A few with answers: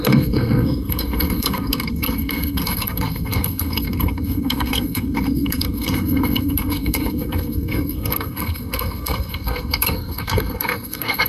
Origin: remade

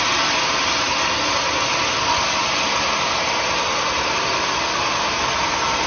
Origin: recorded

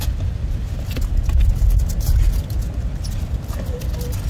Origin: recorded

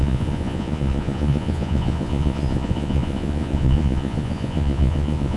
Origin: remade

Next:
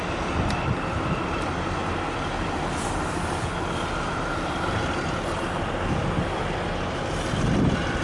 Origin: recorded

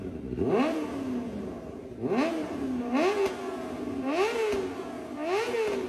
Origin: recorded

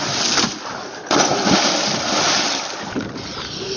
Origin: recorded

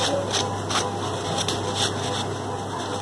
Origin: recorded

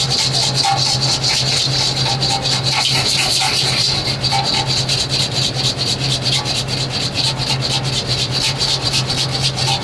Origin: recorded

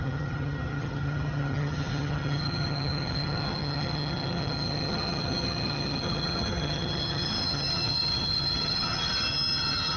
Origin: remade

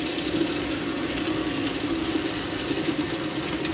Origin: recorded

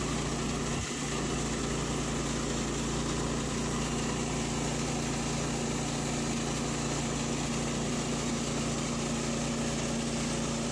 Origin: recorded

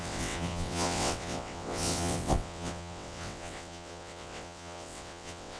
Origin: remade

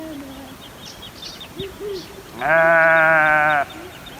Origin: recorded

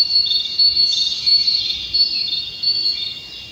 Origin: recorded